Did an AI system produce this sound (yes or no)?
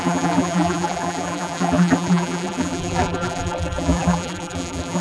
yes